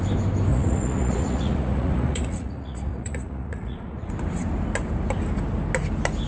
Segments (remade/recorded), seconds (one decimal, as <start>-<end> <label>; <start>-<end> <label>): 0.0-0.5 recorded; 0.5-4.1 remade; 4.1-6.3 recorded